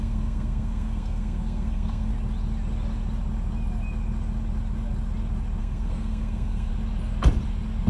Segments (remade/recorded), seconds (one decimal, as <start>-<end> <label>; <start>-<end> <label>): 0.0-2.1 remade; 2.1-5.6 recorded; 5.6-6.7 remade; 6.7-7.9 recorded